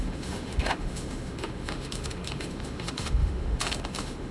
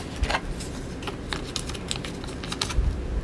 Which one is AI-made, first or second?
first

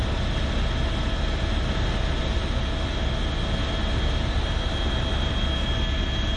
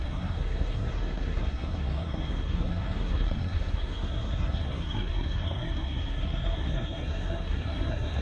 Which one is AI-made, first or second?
second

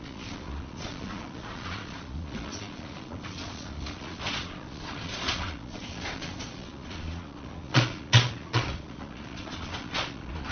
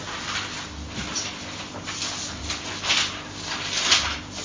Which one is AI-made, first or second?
first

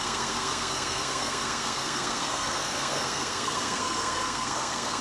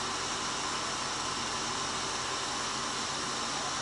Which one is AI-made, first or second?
first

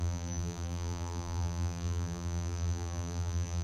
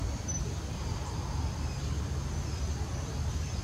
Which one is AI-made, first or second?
first